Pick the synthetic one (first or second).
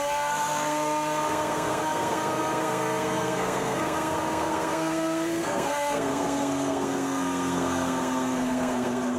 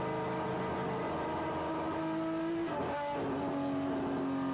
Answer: first